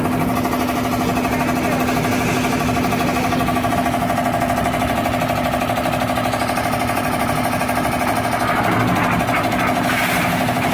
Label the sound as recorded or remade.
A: recorded